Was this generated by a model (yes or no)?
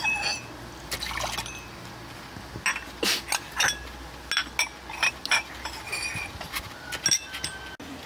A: no